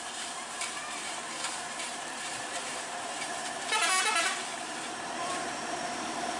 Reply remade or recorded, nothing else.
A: remade